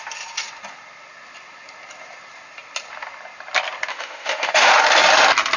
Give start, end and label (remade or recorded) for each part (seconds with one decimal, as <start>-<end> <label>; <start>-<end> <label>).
0.0-3.9 recorded; 3.9-4.7 remade; 4.7-5.6 recorded